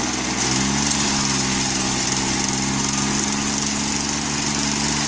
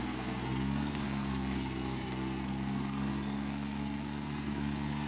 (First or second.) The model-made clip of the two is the second